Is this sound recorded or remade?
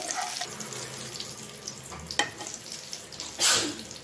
recorded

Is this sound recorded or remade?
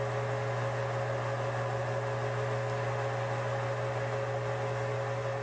recorded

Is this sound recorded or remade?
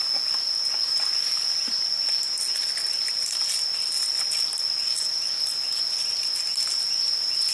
recorded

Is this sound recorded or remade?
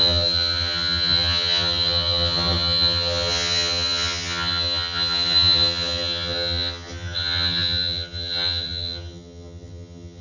remade